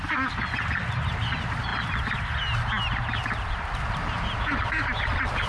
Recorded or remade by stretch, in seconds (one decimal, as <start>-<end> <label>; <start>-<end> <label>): 0.0-5.5 recorded